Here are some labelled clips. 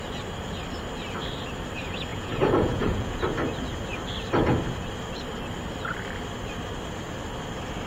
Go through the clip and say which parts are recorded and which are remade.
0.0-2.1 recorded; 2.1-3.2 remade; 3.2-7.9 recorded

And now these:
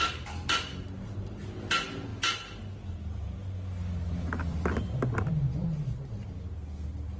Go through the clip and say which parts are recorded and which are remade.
0.0-7.2 recorded

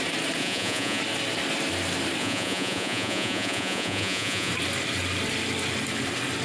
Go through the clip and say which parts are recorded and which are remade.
0.0-0.4 recorded; 0.4-1.0 remade; 1.0-2.2 recorded; 2.2-4.5 remade; 4.5-6.4 recorded

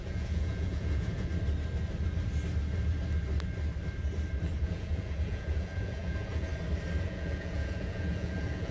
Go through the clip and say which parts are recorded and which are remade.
0.0-1.3 remade; 1.3-4.6 recorded; 4.6-6.5 remade; 6.5-7.0 recorded; 7.0-8.7 remade

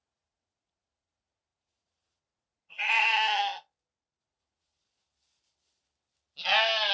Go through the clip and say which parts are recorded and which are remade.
0.0-3.5 remade; 3.5-4.2 recorded; 4.2-4.8 remade; 4.8-6.9 recorded

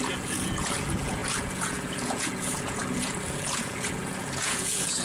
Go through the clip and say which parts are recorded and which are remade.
0.0-5.0 remade

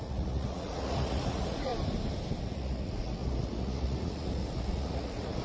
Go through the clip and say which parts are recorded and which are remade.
0.0-1.7 remade; 1.7-2.4 recorded; 2.4-5.4 remade